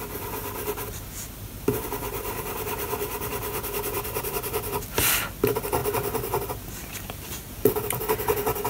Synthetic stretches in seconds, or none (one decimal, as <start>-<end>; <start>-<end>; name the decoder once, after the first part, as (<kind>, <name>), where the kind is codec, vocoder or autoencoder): none